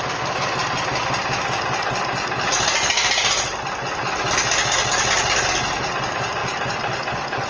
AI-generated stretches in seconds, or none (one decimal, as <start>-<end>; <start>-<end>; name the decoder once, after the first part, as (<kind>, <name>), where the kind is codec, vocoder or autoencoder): none